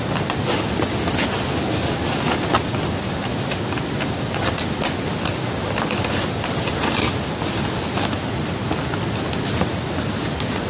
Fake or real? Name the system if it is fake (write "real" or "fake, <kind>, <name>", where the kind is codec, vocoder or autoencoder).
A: real